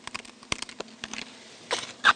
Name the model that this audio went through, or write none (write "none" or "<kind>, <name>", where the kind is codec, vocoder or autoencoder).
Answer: none